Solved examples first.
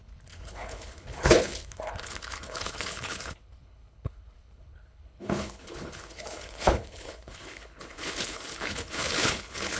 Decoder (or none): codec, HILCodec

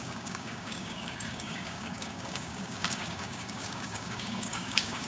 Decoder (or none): codec, DAC